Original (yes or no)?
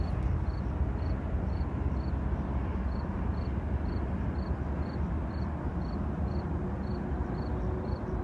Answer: yes